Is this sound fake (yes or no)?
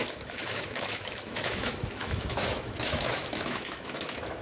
yes